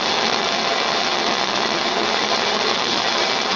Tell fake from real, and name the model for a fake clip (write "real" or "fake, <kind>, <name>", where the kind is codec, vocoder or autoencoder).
fake, vocoder, WaveNeXt